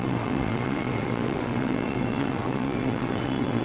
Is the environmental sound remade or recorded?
remade